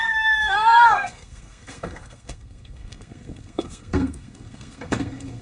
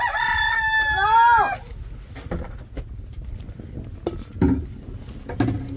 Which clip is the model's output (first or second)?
first